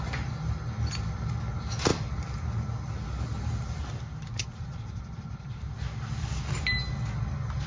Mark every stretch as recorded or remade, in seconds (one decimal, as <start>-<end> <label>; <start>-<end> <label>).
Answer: 0.0-7.7 recorded